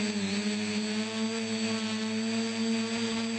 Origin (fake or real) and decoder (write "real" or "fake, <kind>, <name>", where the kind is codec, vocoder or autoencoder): real